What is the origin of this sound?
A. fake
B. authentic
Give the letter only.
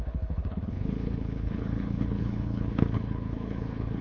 A